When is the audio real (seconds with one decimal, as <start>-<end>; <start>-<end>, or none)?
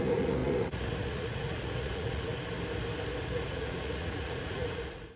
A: 2.3-3.2